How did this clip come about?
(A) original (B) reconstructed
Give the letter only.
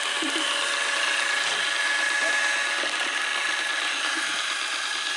A